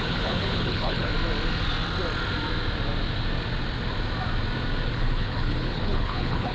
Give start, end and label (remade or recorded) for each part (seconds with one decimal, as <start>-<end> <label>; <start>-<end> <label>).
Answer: 0.0-1.1 remade; 1.1-4.9 recorded; 4.9-6.5 remade